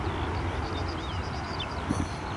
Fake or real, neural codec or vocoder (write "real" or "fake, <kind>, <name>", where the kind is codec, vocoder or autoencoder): real